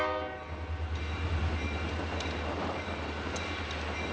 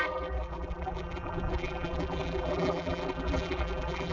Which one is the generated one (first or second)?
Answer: second